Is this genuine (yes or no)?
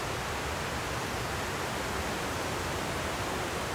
no